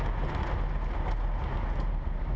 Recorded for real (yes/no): yes